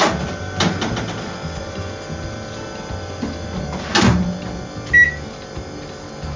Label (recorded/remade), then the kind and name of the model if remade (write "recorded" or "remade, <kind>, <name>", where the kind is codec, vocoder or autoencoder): recorded